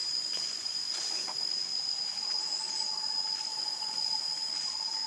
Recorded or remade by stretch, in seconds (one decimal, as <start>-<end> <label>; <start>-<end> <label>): 0.0-1.5 remade; 1.5-3.5 recorded; 3.5-4.5 remade; 4.5-5.1 recorded